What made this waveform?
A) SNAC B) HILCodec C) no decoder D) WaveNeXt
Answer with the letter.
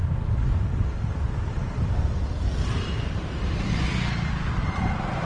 C